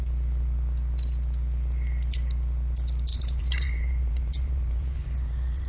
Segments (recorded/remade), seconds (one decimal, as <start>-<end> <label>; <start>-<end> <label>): 0.0-3.1 recorded; 3.1-5.7 remade